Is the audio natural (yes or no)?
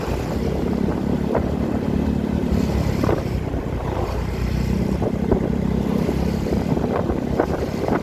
no